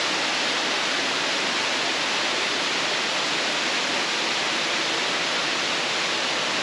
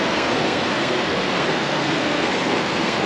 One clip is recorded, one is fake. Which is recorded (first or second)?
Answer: first